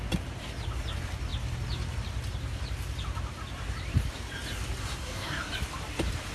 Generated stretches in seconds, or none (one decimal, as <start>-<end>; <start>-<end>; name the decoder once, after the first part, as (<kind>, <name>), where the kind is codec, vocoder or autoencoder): 4.8-5.5 (codec, SNAC)